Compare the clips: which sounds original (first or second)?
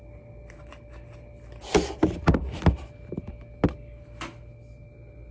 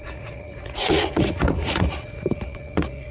first